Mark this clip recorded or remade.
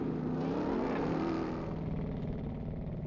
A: recorded